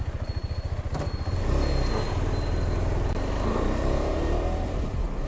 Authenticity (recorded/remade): recorded